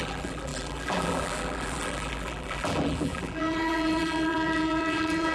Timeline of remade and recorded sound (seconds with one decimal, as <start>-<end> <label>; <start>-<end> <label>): 0.0-5.3 remade